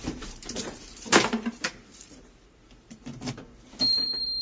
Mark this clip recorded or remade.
remade